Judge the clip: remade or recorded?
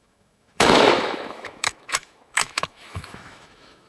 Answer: remade